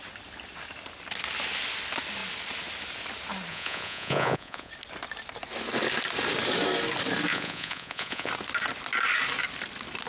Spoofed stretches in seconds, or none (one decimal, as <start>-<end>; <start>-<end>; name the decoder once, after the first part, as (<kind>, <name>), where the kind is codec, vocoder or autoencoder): 3.5-4.7 (vocoder, Vocos); 7.3-8.3